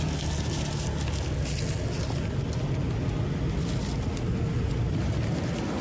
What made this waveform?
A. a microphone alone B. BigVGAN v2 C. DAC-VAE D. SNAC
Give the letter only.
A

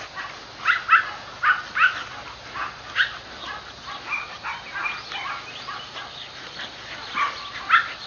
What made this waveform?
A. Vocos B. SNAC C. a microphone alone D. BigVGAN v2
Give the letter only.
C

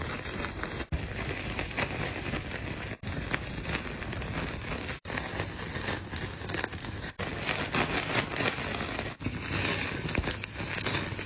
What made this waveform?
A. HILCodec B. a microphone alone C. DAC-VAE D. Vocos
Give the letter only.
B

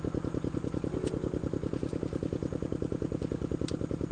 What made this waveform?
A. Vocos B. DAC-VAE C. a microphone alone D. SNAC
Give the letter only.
C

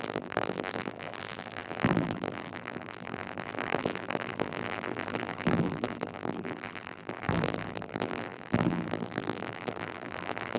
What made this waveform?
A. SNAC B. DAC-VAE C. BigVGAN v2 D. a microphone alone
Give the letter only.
C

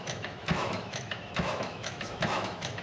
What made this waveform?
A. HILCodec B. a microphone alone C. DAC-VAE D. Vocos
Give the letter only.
C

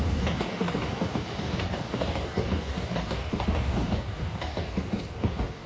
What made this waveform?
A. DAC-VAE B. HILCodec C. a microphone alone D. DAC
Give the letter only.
D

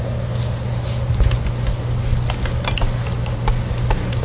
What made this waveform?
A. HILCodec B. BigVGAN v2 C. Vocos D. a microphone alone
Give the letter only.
D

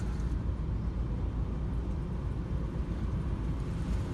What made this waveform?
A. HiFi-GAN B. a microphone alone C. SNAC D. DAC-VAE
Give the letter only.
B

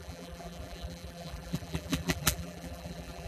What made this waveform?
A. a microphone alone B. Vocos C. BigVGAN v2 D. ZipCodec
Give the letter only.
C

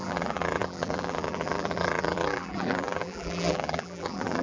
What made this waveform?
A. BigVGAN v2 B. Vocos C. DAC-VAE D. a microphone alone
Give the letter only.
A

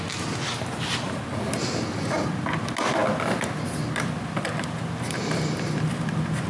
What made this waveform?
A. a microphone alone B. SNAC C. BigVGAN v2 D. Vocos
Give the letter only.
A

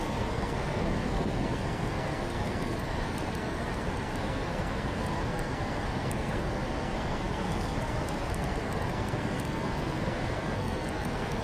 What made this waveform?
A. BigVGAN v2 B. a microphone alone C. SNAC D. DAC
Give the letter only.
C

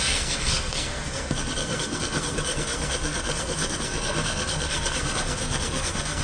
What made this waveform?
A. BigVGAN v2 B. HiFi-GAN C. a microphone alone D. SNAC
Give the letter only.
D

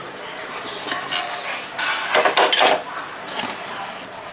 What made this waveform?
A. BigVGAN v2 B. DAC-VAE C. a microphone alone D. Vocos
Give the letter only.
C